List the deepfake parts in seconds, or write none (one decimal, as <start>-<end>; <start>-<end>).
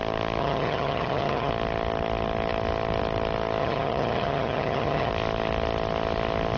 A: 0.4-1.5; 3.6-5.1